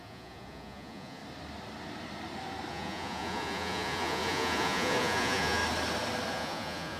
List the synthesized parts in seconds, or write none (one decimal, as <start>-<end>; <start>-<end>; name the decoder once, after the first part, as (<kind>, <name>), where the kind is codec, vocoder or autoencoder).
0.0-1.2 (vocoder, Vocos); 2.7-5.6; 6.3-7.0